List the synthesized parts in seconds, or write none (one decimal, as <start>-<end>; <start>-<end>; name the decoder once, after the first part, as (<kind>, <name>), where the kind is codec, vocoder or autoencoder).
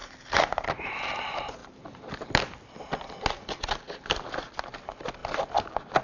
none